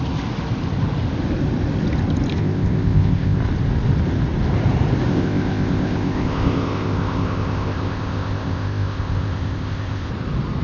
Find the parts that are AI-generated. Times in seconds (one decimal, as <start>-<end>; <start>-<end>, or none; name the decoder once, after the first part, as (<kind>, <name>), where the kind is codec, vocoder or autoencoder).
2.3-3.4 (codec, ZipCodec); 5.1-10.1